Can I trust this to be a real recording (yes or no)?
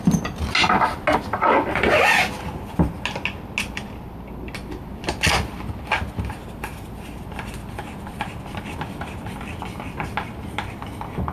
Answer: yes